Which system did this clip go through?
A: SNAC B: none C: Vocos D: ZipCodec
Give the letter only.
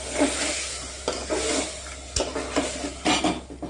B